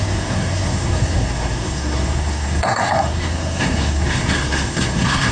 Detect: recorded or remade remade